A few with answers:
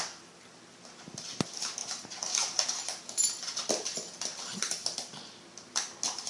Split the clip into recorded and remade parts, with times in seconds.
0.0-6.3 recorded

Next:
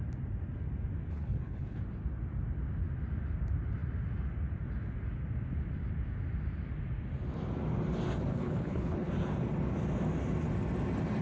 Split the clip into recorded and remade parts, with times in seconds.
0.0-1.1 recorded; 1.1-1.8 remade; 1.8-8.3 recorded; 8.3-9.1 remade; 9.1-11.2 recorded